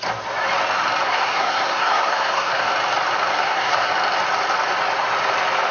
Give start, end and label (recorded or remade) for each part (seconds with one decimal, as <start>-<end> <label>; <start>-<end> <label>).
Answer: 0.0-1.0 recorded; 1.0-2.7 remade; 2.7-3.3 recorded; 3.3-3.9 remade; 3.9-5.7 recorded